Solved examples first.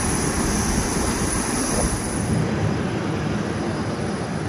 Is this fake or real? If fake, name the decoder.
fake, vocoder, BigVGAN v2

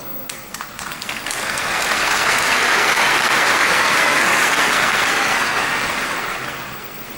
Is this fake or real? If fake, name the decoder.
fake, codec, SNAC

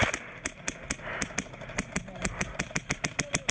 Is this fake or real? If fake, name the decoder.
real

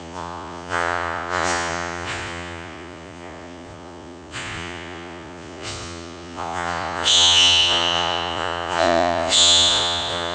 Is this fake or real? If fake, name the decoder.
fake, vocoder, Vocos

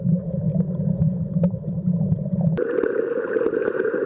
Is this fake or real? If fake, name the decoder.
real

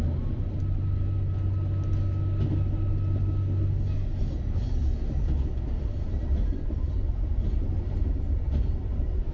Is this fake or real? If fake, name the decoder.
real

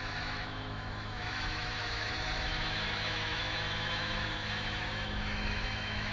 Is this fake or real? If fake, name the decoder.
fake, autoencoder, DAC-VAE